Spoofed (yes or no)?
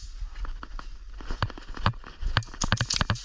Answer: no